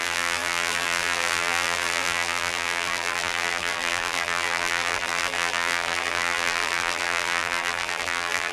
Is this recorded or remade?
remade